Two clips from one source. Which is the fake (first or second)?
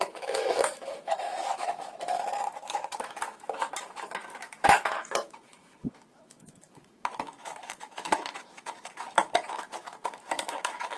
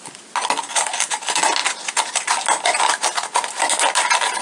first